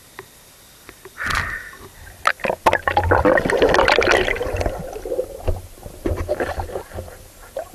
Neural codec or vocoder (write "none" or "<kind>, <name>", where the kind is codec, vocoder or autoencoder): none